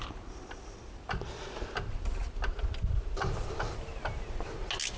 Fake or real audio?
real